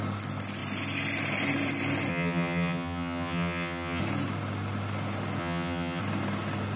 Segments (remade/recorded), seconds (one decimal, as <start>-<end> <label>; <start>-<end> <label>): 0.0-2.1 recorded; 2.1-4.0 remade; 4.0-5.4 recorded; 5.4-6.0 remade; 6.0-6.8 recorded

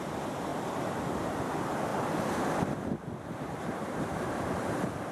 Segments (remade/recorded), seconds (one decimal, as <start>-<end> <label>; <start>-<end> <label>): 0.0-1.9 remade; 1.9-2.6 recorded; 2.6-5.1 remade

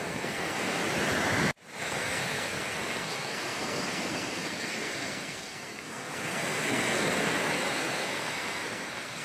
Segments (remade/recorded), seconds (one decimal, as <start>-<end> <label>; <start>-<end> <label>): 0.0-0.8 remade; 0.8-1.8 recorded; 1.8-9.2 remade

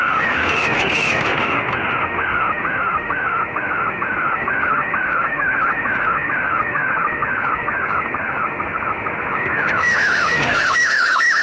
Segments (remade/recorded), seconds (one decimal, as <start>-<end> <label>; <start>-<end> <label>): 0.0-11.4 remade

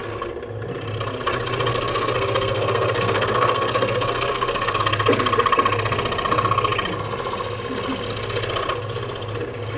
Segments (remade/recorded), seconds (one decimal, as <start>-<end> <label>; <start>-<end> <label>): 0.0-1.7 recorded; 1.7-4.8 remade; 4.8-9.8 recorded

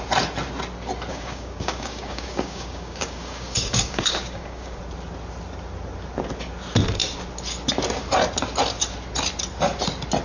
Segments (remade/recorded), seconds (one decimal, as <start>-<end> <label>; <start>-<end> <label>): 0.0-1.1 recorded; 1.1-4.8 remade; 4.8-10.2 recorded

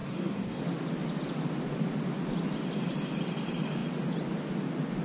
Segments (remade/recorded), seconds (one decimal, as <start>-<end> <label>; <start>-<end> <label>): 0.0-0.6 remade; 0.6-5.0 recorded